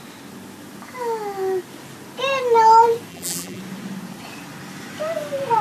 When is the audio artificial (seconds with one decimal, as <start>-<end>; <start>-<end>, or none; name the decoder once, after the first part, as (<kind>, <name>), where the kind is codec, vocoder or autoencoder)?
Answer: 3.1-3.6 (vocoder, BigVGAN v2)